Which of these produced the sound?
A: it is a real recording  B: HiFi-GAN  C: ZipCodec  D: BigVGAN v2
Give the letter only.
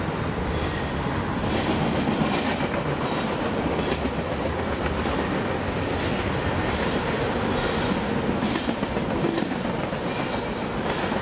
A